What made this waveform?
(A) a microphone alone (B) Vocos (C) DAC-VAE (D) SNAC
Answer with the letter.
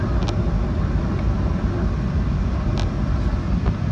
A